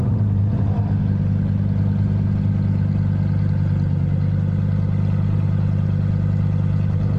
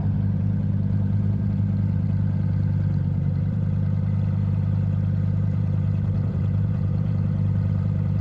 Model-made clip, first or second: second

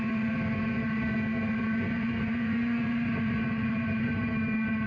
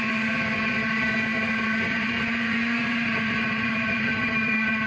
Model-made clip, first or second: second